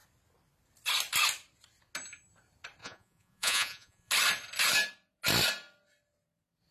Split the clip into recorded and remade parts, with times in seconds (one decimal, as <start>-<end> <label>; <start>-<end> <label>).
0.0-2.8 recorded; 2.8-4.1 remade; 4.1-6.7 recorded